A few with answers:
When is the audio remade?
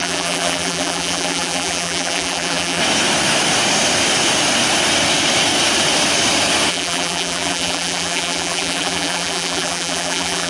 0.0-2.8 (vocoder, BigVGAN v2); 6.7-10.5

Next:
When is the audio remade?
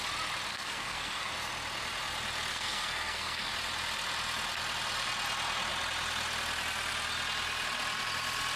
0.5-1.3 (codec, SNAC); 2.5-3.5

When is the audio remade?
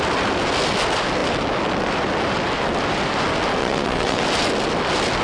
3.6-4.2 (vocoder, WaveNeXt)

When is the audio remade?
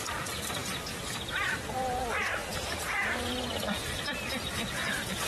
none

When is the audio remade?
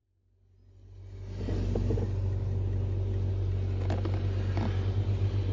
none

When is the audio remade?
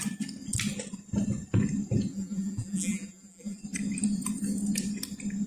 2.1-3.6 (vocoder, BigVGAN v2)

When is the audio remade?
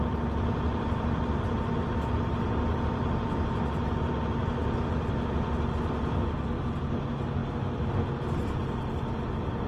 none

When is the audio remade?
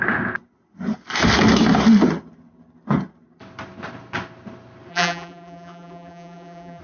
4.9-6.8 (vocoder, BigVGAN v2)